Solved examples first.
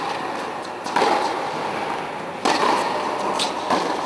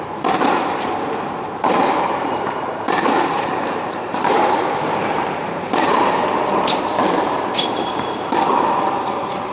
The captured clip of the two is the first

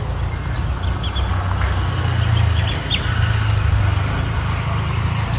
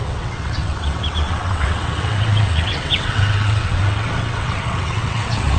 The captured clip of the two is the first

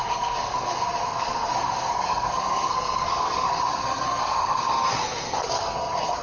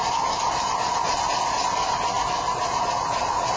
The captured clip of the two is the second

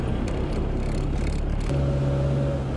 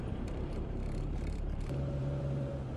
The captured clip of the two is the first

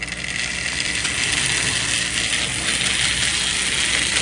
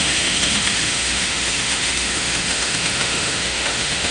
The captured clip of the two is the first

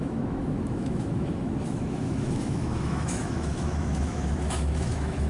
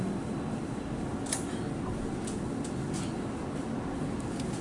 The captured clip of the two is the second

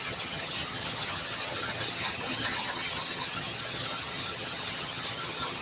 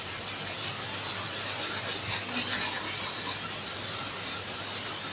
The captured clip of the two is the second